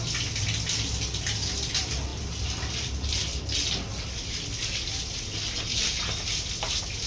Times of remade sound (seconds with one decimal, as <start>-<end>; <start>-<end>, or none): none